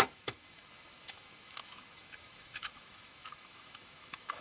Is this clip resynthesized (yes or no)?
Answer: yes